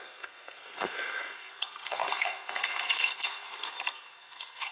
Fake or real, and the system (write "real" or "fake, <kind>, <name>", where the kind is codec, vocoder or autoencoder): fake, codec, SNAC